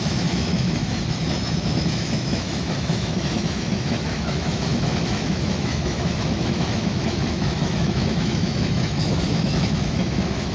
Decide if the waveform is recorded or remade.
remade